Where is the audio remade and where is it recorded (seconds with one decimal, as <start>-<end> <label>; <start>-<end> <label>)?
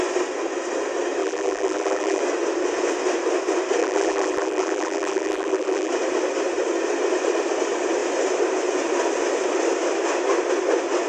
0.0-1.2 recorded; 1.2-2.2 remade; 2.2-3.8 recorded; 3.8-5.9 remade; 5.9-11.1 recorded